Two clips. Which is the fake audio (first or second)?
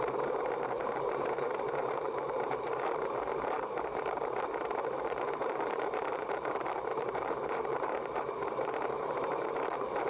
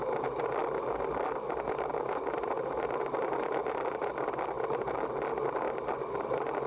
first